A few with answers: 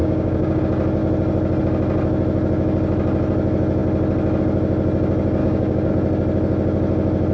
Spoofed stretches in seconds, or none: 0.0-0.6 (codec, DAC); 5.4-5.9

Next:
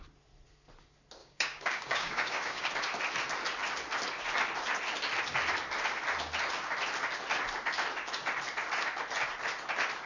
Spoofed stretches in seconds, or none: 1.2-2.7 (codec, DAC)

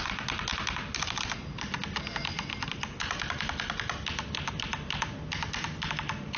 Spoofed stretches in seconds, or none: none

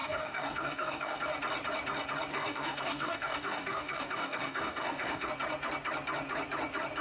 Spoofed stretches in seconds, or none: 0.0-1.2 (codec, DAC); 2.3-5.3

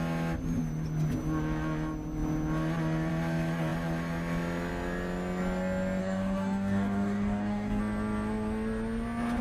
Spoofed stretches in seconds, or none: 6.0-7.8 (codec, DAC)

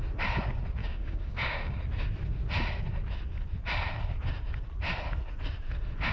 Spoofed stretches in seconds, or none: 0.8-1.8 (codec, DAC)

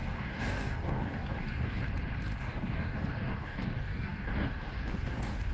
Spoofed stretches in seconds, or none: 0.0-1.8 (codec, DAC); 2.4-5.5